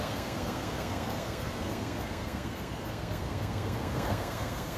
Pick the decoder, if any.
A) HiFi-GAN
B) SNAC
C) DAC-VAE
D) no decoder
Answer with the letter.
B